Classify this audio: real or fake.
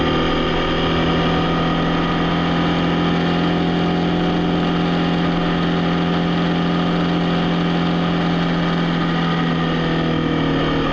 real